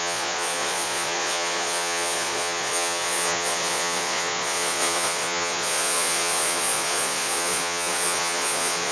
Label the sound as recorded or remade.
remade